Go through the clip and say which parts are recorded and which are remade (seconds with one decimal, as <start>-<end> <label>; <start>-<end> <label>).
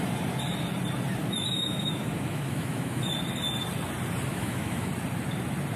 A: 0.0-1.2 recorded; 1.2-3.0 remade; 3.0-4.3 recorded; 4.3-4.9 remade; 4.9-5.8 recorded